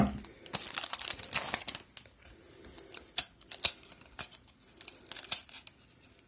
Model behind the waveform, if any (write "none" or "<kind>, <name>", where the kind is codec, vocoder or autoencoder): none